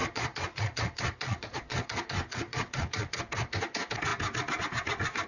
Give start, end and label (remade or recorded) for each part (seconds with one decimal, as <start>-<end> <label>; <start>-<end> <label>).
0.0-3.2 remade; 3.2-5.3 recorded